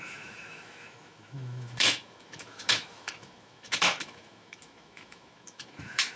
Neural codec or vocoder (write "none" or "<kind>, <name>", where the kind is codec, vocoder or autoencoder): autoencoder, DAC-VAE